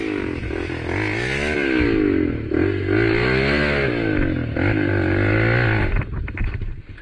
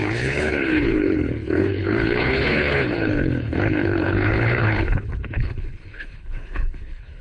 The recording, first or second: first